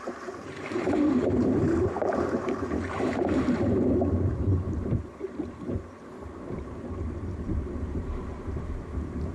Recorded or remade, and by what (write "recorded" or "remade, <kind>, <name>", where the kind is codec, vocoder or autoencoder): remade, vocoder, BigVGAN v2